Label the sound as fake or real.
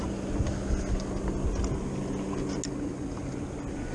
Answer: real